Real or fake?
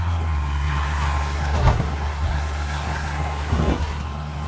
fake